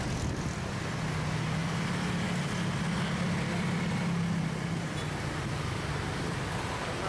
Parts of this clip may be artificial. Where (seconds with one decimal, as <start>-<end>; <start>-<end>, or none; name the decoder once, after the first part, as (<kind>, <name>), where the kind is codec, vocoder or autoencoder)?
none